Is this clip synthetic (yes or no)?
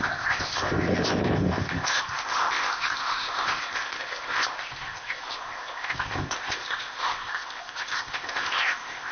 yes